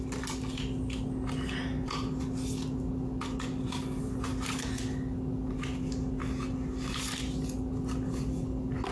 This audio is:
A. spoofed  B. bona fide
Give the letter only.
B